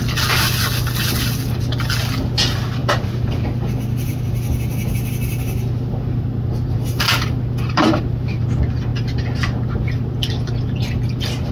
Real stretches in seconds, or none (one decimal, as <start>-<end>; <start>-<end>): 0.0-11.5